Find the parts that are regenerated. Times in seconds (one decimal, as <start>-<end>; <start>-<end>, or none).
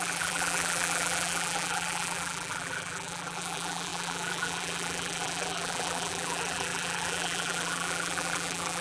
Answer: 0.0-8.8